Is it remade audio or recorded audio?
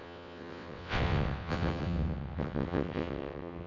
remade